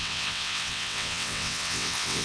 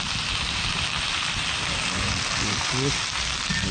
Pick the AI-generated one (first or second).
first